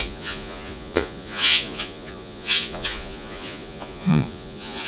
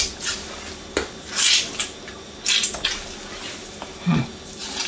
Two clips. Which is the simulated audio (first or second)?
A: first